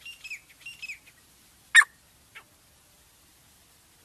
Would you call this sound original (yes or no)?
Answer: yes